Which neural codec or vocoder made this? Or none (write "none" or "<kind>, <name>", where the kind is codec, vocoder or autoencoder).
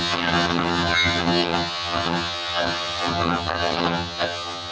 vocoder, HiFi-GAN